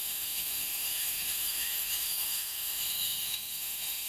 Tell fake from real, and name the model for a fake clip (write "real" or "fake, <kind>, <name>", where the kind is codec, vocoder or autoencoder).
fake, autoencoder, DAC-VAE